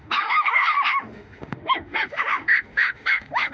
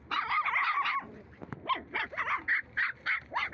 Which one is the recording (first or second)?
second